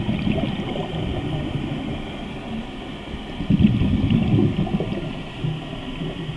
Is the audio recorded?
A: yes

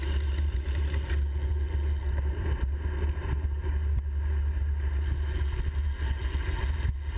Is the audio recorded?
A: yes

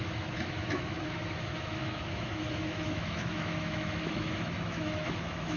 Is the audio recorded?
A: no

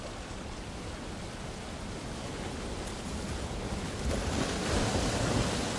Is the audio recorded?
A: yes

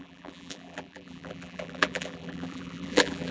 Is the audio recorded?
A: no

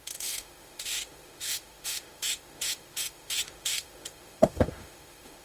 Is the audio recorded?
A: no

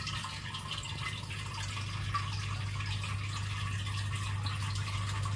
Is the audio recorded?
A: yes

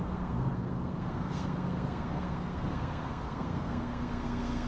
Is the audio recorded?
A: no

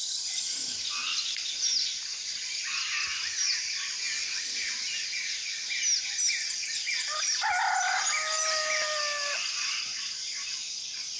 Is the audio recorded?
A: yes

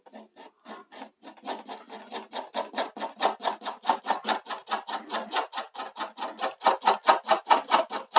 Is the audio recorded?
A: yes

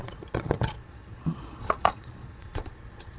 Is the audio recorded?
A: no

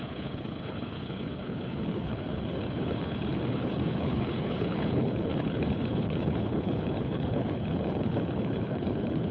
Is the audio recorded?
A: no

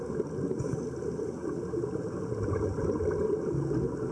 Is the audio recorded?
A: yes